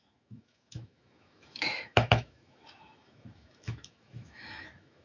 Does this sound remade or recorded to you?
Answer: remade